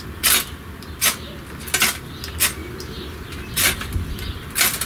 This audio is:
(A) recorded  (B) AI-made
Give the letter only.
A